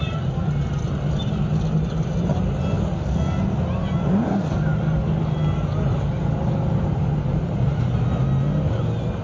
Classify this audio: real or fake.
real